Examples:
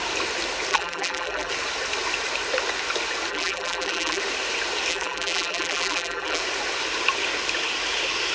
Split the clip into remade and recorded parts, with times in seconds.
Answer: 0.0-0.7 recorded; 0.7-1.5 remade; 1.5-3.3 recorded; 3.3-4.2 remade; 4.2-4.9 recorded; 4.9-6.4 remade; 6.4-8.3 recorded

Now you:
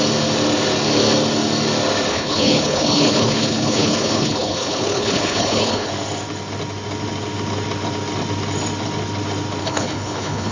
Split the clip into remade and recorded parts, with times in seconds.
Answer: 0.0-2.1 recorded; 2.1-5.9 remade; 5.9-9.6 recorded; 9.6-10.5 remade